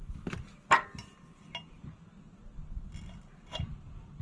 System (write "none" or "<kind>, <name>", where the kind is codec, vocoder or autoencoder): none